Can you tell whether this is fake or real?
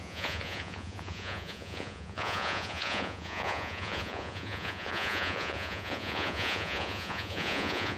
fake